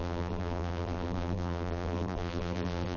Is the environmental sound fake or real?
fake